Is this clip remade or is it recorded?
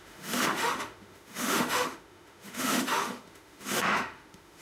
remade